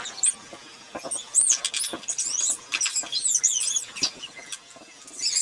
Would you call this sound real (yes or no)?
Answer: yes